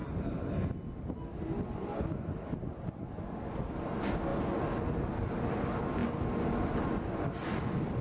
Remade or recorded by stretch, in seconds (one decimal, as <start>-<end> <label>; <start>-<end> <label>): 0.0-8.0 recorded